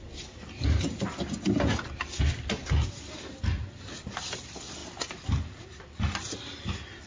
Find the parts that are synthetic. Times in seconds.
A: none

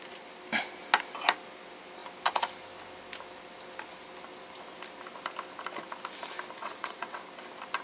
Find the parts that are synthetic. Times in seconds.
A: 6.6-7.2 (vocoder, WaveNeXt)

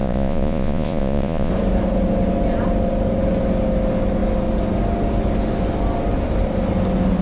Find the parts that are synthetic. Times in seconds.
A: 0.0-1.5 (vocoder, Vocos)